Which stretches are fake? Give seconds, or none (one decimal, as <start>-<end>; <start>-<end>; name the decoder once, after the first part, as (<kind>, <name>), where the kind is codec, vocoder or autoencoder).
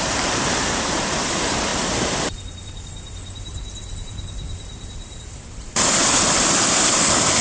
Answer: 0.0-7.4 (vocoder, BigVGAN v2)